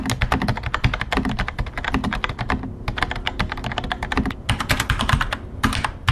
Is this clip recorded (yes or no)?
yes